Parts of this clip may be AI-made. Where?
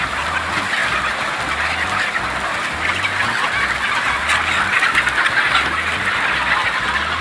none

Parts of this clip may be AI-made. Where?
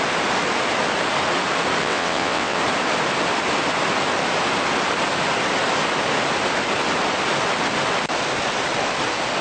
1.8-2.6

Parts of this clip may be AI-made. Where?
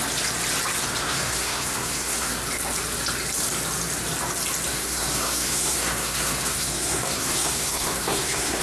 1.0-2.4; 4.7-8.6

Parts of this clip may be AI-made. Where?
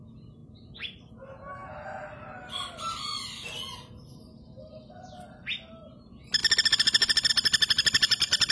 none